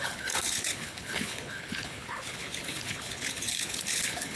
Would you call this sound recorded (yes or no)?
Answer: no